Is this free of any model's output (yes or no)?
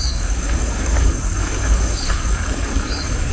no